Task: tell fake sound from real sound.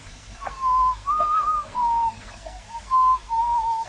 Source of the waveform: fake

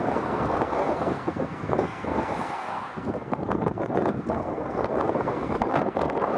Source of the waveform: fake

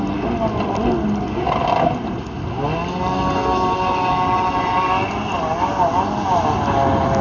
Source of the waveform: real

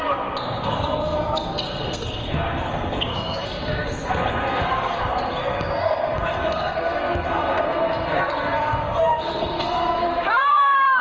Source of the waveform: fake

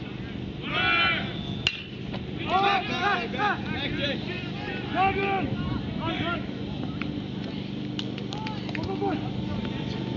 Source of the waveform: real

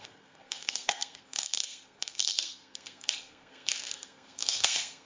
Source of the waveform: fake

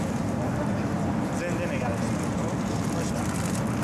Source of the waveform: real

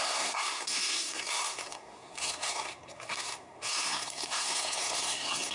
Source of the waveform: fake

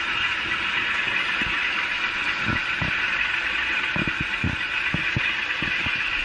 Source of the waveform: real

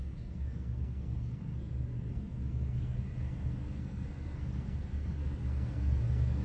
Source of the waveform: fake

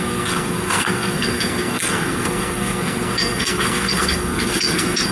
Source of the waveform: fake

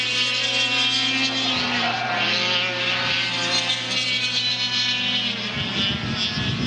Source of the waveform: real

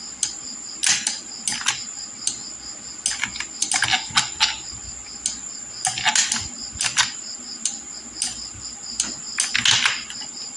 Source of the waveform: real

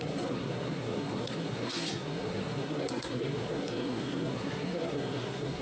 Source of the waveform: fake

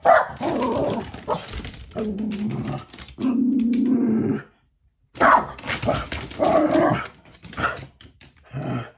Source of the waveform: real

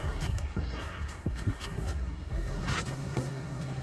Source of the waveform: fake